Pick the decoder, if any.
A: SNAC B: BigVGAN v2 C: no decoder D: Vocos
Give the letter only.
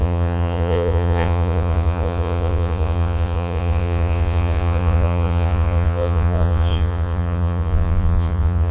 D